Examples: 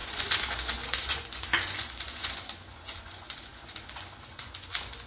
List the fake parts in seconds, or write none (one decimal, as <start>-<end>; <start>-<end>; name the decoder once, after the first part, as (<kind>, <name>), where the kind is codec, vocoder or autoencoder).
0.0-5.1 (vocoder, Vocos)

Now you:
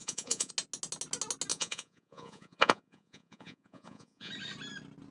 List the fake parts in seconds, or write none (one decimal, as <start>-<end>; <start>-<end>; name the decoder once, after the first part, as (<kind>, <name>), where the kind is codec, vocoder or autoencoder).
0.0-0.5 (vocoder, Vocos); 1.5-4.3

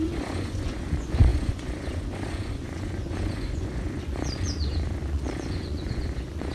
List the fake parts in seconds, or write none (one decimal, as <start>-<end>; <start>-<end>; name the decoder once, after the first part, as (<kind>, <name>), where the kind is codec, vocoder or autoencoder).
0.0-6.5 (vocoder, Vocos)